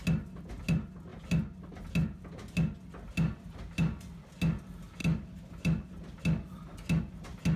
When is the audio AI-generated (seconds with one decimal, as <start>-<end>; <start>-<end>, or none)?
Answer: none